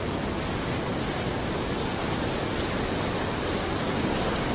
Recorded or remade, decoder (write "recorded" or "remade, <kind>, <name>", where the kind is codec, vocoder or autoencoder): recorded